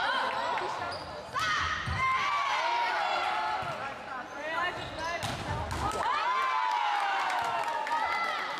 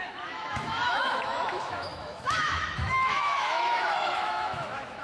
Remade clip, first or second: second